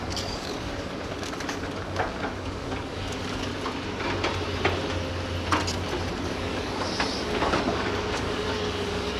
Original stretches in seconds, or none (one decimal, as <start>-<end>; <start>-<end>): 3.5-6.2